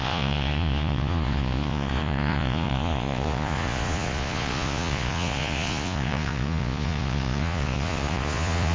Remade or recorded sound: remade